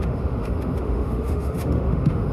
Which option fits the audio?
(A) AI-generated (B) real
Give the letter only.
A